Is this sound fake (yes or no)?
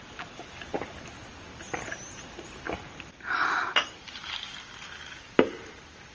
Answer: no